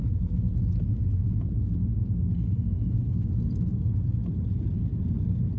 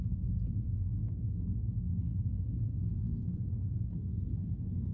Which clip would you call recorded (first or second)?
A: first